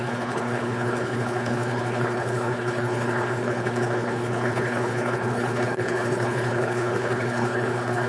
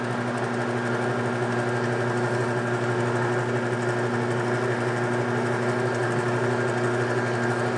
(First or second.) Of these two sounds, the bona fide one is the second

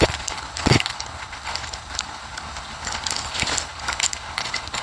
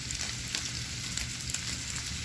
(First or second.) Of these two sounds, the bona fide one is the second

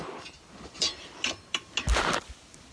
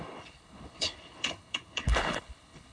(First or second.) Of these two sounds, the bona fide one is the first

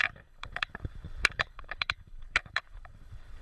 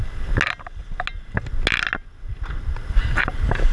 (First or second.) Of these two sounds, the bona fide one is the second